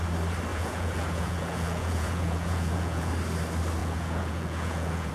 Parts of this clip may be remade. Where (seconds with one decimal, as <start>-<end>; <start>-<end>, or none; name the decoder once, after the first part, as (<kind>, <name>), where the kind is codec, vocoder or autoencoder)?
0.5-3.1 (vocoder, Vocos); 3.8-5.1